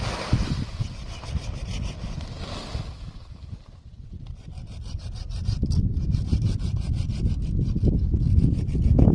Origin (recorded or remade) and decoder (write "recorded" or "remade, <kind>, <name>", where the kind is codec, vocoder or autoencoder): recorded